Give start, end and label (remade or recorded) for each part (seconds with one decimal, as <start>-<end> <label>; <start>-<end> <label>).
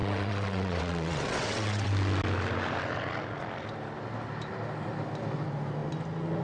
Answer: 0.0-1.9 remade; 1.9-6.4 recorded